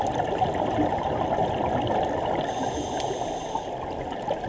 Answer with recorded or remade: recorded